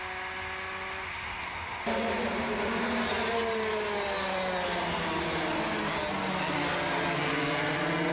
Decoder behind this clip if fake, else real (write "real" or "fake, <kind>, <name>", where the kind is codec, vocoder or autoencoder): real